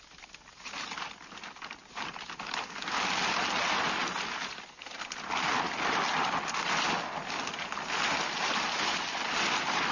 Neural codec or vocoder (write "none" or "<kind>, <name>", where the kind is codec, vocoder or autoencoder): none